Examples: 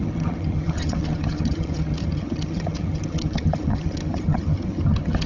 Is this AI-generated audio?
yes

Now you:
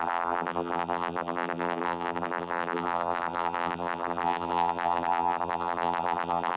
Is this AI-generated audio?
yes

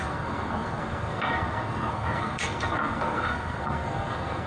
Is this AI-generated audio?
yes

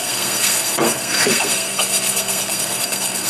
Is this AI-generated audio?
yes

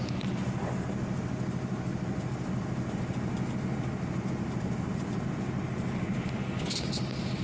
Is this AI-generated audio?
no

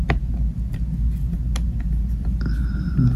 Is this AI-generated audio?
no